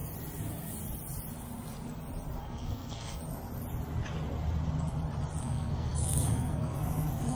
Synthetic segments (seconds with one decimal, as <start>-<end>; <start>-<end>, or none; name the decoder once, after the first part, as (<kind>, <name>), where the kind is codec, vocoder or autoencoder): 2.4-3.2 (codec, SNAC); 5.4-7.4